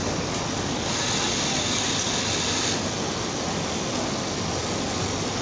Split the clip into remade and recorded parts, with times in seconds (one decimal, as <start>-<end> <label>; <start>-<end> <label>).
0.0-5.4 recorded